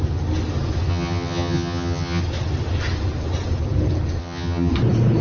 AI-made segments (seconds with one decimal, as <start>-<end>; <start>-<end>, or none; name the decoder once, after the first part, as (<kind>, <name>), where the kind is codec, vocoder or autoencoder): 0.9-2.2 (vocoder, HiFi-GAN); 4.2-4.7